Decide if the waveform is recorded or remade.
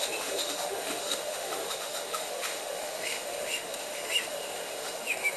remade